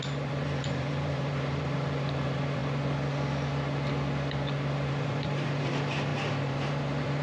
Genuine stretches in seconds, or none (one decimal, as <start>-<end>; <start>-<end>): 2.6-4.9